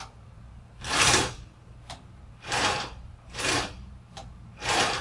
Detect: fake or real fake